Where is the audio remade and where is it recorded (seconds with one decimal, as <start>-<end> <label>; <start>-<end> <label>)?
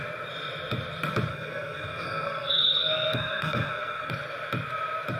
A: 0.0-1.3 recorded; 1.3-4.1 remade; 4.1-5.2 recorded